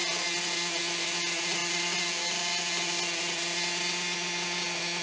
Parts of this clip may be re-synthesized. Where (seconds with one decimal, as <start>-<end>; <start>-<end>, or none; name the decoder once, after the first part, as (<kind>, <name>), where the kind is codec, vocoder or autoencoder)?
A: none